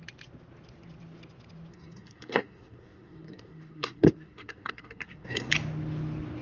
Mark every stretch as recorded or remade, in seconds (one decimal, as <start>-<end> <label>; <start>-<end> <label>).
0.0-1.7 recorded; 1.7-5.5 remade; 5.5-6.4 recorded